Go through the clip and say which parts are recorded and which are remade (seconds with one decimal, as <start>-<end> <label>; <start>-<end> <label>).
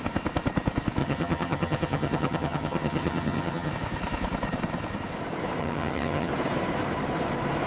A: 0.0-1.0 recorded; 1.0-3.7 remade; 3.7-5.6 recorded; 5.6-6.3 remade; 6.3-7.7 recorded